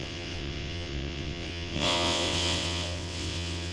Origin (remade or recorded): remade